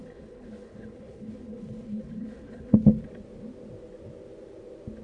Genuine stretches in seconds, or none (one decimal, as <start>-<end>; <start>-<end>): 3.0-5.0